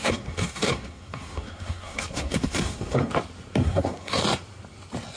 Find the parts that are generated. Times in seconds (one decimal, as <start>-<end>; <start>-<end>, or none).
0.0-3.1; 3.6-4.2